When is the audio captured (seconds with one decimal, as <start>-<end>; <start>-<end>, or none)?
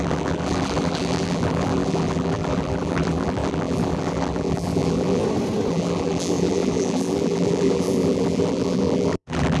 5.2-5.7